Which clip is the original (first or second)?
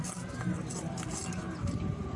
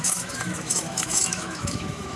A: first